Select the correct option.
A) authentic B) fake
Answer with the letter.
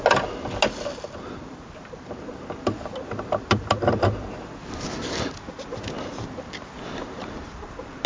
A